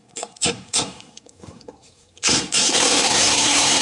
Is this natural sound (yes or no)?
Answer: no